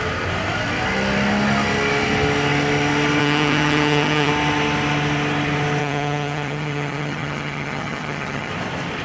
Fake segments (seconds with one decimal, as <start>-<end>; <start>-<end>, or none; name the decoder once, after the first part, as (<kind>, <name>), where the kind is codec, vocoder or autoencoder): 3.2-4.3 (vocoder, HiFi-GAN); 5.8-8.5